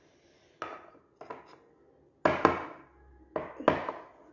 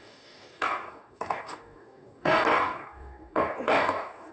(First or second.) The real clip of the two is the first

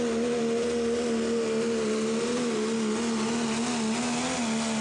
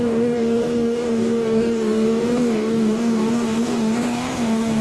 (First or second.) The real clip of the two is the first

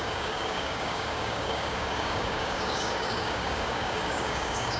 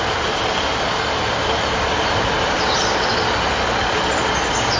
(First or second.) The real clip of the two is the second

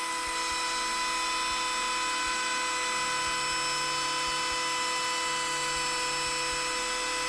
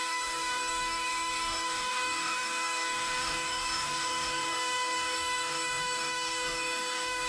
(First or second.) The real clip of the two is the first